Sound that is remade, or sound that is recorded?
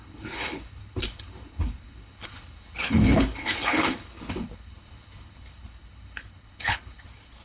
remade